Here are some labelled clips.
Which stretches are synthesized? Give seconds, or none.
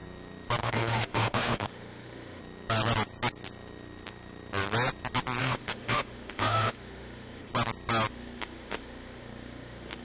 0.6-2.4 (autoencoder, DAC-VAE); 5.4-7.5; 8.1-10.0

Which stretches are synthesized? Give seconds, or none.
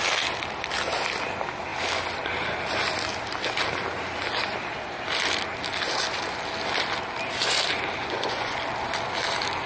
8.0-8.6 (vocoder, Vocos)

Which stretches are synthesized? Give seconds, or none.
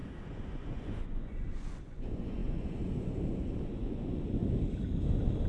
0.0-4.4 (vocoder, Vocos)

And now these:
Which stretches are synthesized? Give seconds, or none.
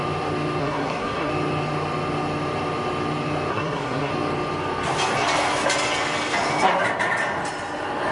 0.6-1.3 (codec, SNAC); 3.5-4.1